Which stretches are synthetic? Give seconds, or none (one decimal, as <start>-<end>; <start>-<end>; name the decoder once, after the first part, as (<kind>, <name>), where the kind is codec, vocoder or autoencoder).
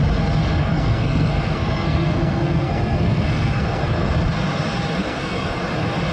0.6-4.1 (codec, SNAC); 5.0-5.6